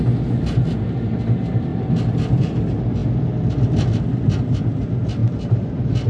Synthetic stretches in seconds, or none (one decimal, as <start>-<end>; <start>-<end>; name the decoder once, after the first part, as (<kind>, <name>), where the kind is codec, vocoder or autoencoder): 1.7-2.6 (vocoder, BigVGAN v2); 5.2-6.1